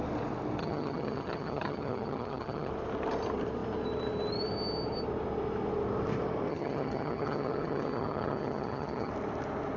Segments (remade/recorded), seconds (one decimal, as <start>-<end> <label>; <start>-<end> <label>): 0.0-0.6 recorded; 0.6-2.7 remade; 2.7-6.5 recorded; 6.5-9.1 remade; 9.1-9.8 recorded

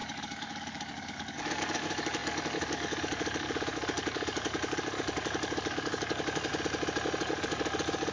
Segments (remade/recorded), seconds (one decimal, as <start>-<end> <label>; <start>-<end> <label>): 0.0-6.5 remade; 6.5-7.2 recorded; 7.2-8.1 remade

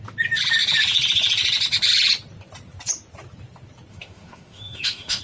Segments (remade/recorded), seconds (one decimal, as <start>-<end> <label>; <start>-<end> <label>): 0.0-3.9 recorded; 3.9-5.2 remade